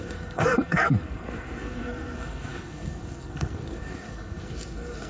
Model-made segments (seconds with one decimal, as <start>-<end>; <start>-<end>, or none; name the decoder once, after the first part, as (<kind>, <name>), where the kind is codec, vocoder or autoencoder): 0.0-5.1 (codec, SNAC)